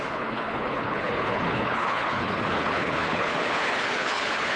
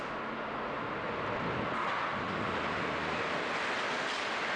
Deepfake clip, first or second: first